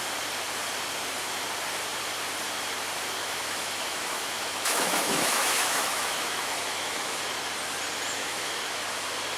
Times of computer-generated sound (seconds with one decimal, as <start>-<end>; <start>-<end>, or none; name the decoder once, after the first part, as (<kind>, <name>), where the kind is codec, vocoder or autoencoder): 3.2-7.2 (autoencoder, DAC-VAE); 8.2-8.8